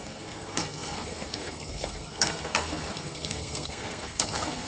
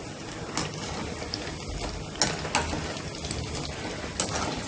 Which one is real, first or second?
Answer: second